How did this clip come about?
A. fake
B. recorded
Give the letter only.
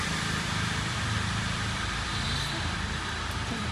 A